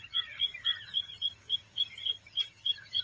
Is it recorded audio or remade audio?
remade